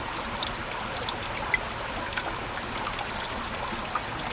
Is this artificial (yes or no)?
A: no